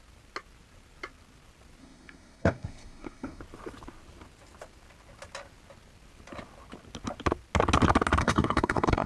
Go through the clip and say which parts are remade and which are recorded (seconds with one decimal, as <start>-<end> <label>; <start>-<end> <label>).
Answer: 0.0-1.8 recorded; 1.8-3.4 remade; 3.4-8.2 recorded; 8.2-9.1 remade